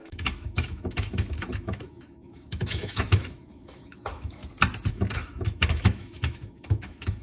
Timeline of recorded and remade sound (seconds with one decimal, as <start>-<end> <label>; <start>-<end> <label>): 0.0-4.4 remade; 4.4-4.9 recorded; 4.9-7.2 remade